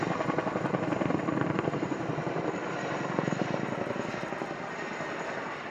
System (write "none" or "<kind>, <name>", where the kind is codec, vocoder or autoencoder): vocoder, BigVGAN v2